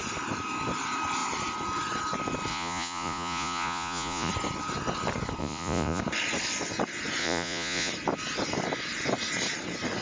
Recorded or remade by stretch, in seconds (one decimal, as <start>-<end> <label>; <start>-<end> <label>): 0.0-2.5 recorded; 2.5-4.3 remade; 4.3-5.4 recorded; 5.4-6.0 remade; 6.0-7.2 recorded; 7.2-7.9 remade; 7.9-10.0 recorded